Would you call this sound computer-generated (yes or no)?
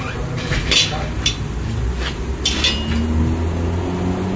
no